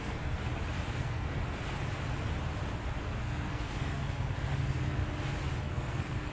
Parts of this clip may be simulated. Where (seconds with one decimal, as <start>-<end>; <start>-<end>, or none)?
0.0-0.4; 0.9-1.4; 3.0-5.0; 5.6-6.3